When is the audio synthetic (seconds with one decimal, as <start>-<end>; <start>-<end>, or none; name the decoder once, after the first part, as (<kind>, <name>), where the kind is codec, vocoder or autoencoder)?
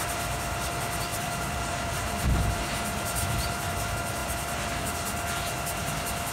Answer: 1.1-3.7 (vocoder, BigVGAN v2)